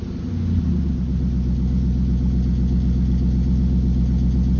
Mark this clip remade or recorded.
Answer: recorded